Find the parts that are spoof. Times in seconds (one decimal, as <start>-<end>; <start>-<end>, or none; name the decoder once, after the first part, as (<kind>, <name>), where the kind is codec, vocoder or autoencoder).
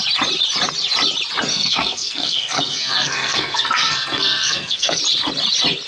1.5-5.0 (codec, SNAC)